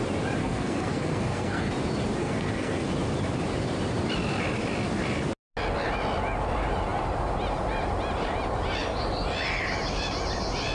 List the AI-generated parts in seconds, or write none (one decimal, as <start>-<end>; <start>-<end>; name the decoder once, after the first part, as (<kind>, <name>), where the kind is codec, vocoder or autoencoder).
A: 0.4-1.7 (codec, SNAC); 2.2-2.9